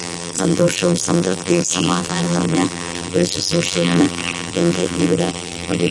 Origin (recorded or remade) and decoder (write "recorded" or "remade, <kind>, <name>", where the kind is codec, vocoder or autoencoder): remade, vocoder, BigVGAN v2